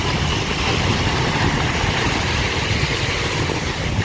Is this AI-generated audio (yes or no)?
no